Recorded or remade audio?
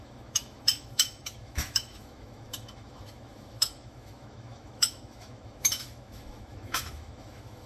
remade